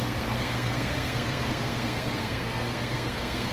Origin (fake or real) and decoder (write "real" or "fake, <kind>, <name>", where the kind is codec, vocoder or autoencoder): fake, codec, SNAC